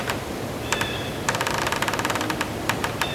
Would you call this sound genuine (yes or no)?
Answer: no